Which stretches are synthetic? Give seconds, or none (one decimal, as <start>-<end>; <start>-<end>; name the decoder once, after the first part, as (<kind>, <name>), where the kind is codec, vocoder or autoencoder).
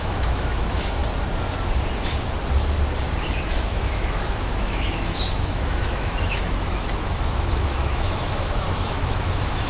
0.0-1.0 (autoencoder, DAC-VAE); 3.5-9.7